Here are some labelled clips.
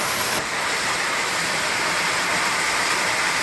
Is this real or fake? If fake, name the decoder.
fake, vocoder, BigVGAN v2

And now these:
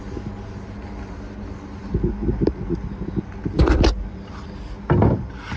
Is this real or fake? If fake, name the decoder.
real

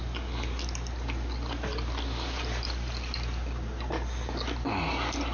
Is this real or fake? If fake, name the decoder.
real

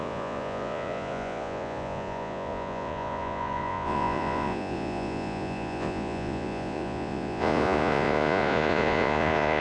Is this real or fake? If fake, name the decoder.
fake, vocoder, Vocos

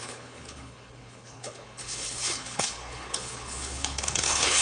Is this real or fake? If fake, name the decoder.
fake, codec, HILCodec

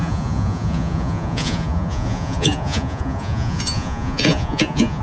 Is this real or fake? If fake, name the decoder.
fake, vocoder, Vocos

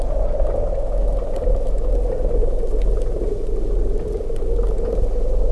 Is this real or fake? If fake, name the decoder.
real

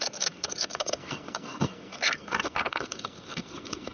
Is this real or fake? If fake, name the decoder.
fake, codec, SNAC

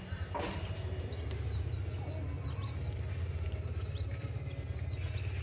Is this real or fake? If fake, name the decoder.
real